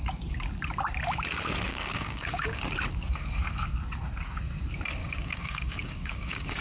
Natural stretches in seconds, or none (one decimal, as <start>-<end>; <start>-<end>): 0.0-1.7; 2.6-5.0